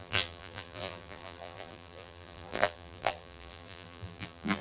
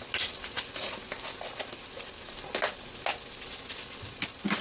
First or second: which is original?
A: second